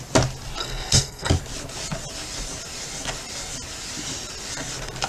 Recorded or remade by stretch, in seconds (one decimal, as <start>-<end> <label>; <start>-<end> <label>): 0.0-0.6 recorded; 0.6-1.3 remade; 1.3-5.1 recorded